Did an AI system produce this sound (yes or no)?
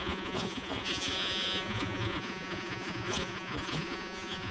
yes